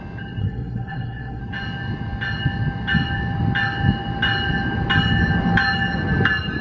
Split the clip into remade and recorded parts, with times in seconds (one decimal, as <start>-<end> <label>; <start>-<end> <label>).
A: 0.0-0.4 recorded; 0.4-1.4 remade; 1.4-6.6 recorded